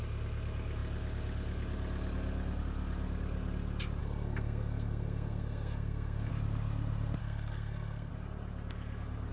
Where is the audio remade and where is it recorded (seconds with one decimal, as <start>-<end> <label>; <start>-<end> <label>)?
0.0-4.0 recorded; 4.0-6.3 remade; 6.3-7.2 recorded; 7.2-8.1 remade; 8.1-9.3 recorded